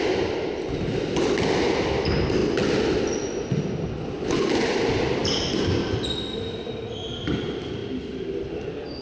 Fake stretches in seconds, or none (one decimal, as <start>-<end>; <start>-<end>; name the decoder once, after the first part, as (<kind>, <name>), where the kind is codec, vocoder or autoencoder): none